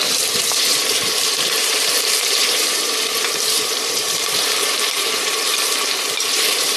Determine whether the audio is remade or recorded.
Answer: remade